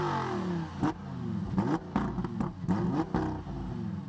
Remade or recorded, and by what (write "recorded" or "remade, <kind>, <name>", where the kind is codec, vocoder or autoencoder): recorded